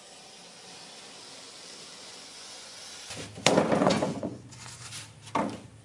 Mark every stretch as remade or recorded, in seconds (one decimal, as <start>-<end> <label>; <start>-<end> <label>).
0.0-2.0 recorded; 2.0-2.8 remade; 2.8-3.8 recorded; 3.8-4.9 remade; 4.9-5.8 recorded